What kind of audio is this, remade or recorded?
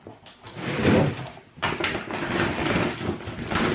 recorded